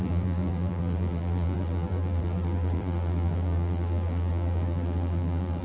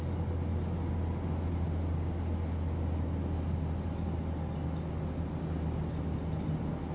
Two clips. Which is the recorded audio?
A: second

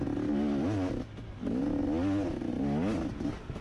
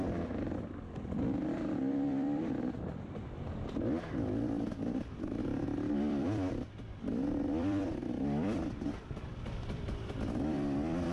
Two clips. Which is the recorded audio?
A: first